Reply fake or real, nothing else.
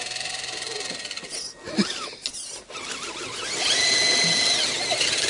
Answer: real